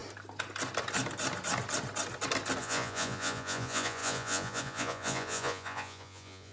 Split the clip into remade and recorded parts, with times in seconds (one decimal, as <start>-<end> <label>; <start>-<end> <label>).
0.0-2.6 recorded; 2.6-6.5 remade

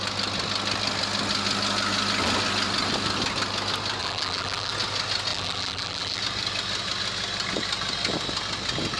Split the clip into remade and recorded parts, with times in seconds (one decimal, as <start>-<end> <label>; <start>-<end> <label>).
0.0-4.0 recorded; 4.0-4.7 remade; 4.7-5.3 recorded; 5.3-6.2 remade; 6.2-9.0 recorded

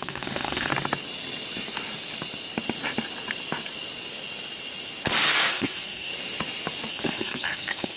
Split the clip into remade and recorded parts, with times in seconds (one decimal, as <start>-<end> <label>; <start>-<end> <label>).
0.0-0.7 remade; 0.7-5.5 recorded; 5.5-6.1 remade; 6.1-6.9 recorded; 6.9-8.0 remade